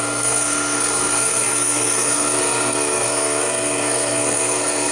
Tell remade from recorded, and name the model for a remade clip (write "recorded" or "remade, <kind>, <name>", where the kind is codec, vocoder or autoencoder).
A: remade, codec, SNAC